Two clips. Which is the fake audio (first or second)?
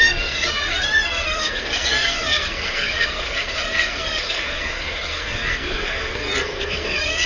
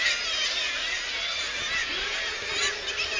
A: first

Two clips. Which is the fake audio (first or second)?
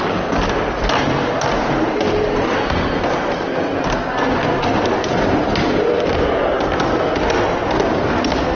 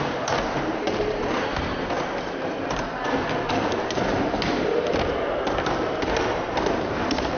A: second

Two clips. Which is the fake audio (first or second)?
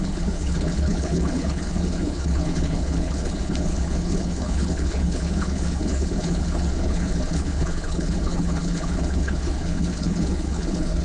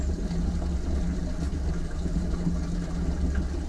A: first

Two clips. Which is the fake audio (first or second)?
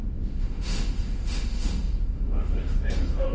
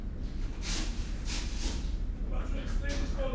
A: first